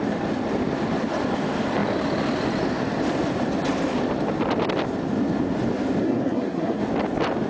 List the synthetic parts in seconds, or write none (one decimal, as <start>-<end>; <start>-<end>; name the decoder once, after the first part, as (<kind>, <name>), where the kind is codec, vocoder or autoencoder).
6.0-6.8 (codec, SNAC)